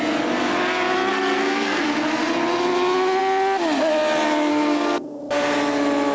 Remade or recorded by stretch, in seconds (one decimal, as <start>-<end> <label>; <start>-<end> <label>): 0.0-1.1 recorded; 1.1-1.8 remade; 1.8-4.5 recorded; 4.5-5.2 remade; 5.2-6.1 recorded